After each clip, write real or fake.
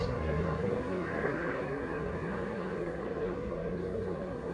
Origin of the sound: fake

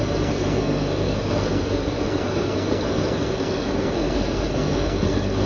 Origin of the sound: fake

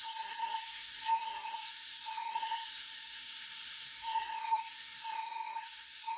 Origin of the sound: fake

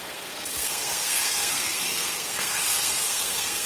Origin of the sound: fake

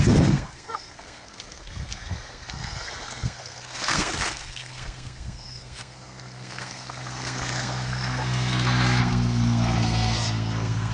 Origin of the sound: fake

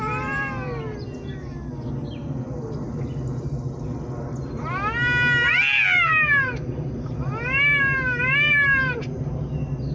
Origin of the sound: real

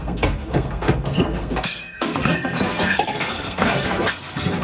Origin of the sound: fake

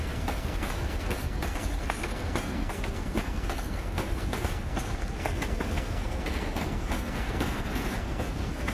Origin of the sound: fake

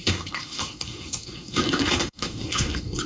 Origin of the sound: fake